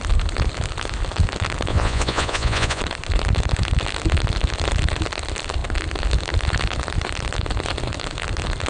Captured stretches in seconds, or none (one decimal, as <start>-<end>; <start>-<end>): 0.0-1.7; 2.8-8.7